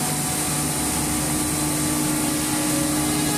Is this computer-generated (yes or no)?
no